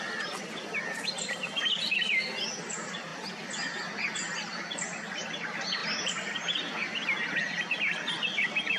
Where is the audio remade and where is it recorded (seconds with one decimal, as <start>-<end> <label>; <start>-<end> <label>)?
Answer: 0.0-8.8 recorded